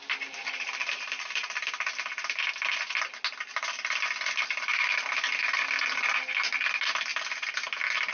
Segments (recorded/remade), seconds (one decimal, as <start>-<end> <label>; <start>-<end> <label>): 0.0-8.1 recorded

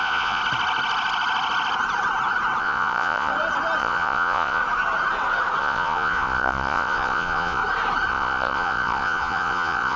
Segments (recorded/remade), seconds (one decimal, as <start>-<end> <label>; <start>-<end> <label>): 0.0-0.4 remade; 0.4-2.6 recorded; 2.6-3.3 remade; 3.3-3.8 recorded; 3.8-4.6 remade; 4.6-5.6 recorded; 5.6-7.6 remade; 7.6-8.1 recorded; 8.1-10.0 remade

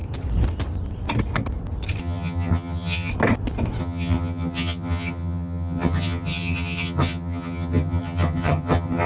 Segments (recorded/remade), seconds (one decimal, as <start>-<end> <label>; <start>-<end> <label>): 0.0-2.0 recorded; 2.0-3.1 remade; 3.1-3.8 recorded; 3.8-9.1 remade

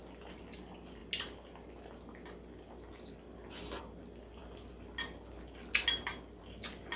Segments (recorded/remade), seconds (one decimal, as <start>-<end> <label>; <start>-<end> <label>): 0.0-7.0 recorded

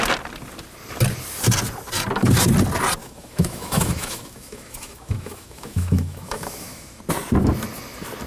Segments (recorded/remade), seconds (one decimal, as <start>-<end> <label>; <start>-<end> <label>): 0.0-3.0 recorded; 3.0-7.0 remade; 7.0-8.3 recorded

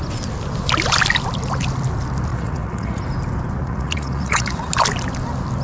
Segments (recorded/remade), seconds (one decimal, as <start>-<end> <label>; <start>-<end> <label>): 0.0-2.3 recorded; 2.3-3.0 remade; 3.0-3.6 recorded; 3.6-4.7 remade; 4.7-5.6 recorded